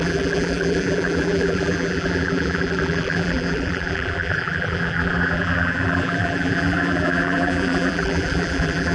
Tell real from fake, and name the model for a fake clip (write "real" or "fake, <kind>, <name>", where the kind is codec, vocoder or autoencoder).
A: fake, vocoder, BigVGAN v2